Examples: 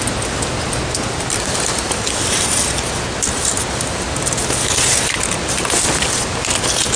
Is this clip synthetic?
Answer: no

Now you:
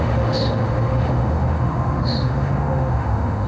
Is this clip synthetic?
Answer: yes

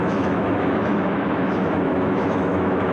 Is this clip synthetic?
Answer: yes